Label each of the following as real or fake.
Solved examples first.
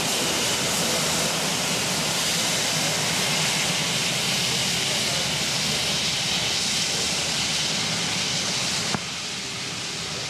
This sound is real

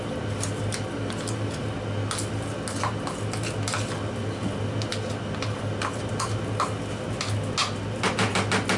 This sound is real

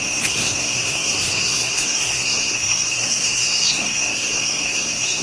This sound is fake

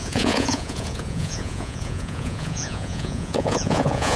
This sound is fake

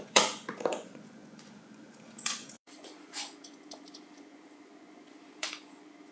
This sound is fake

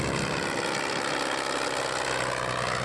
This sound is real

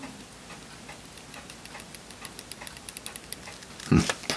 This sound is real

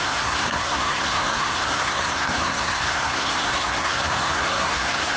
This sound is fake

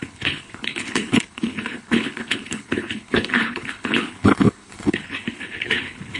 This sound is fake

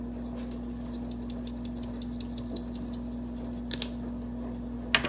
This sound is real